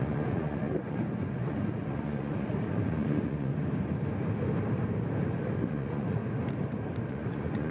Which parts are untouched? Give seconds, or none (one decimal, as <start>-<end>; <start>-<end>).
3.5-5.7; 6.2-7.0